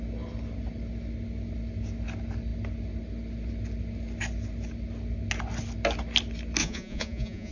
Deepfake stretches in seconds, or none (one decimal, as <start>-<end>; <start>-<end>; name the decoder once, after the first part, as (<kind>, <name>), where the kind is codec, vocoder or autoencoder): 6.6-7.5 (vocoder, Vocos)